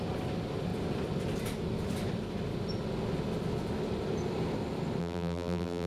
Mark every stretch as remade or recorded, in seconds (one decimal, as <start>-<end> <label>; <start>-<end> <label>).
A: 0.0-5.0 recorded; 5.0-5.9 remade